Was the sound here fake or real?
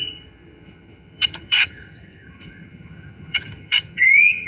fake